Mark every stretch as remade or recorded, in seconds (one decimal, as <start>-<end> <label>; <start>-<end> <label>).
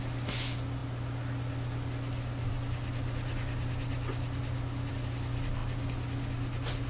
0.0-6.9 recorded